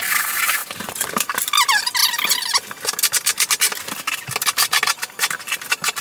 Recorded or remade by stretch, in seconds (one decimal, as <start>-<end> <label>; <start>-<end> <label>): 0.0-0.6 remade; 0.6-1.1 recorded; 1.1-2.0 remade; 2.0-5.6 recorded; 5.6-6.0 remade